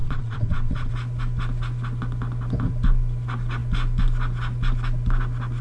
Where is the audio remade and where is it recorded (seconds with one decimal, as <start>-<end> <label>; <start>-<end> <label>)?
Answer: 0.0-0.9 remade; 0.9-5.6 recorded